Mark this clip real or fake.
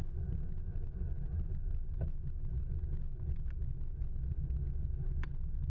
real